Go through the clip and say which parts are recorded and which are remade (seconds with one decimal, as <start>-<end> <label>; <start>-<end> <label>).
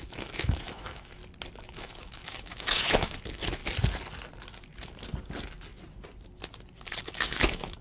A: 0.0-1.2 remade; 1.2-1.7 recorded; 1.7-3.6 remade; 3.6-7.0 recorded; 7.0-7.8 remade